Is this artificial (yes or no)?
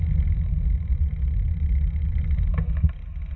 no